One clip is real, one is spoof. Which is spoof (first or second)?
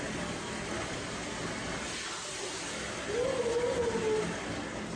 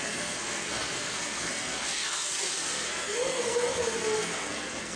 second